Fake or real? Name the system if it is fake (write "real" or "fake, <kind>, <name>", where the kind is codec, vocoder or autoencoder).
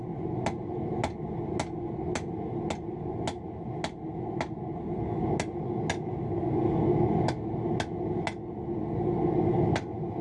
real